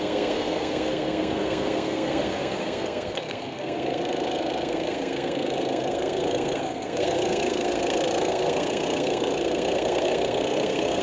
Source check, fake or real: fake